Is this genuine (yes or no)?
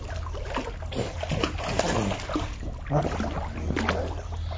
yes